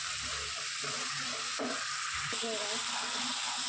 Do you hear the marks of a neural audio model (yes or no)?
no